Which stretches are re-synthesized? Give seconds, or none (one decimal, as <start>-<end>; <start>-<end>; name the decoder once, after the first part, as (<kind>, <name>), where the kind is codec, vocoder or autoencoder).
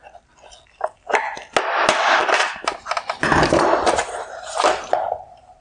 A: 2.2-5.6 (vocoder, BigVGAN v2)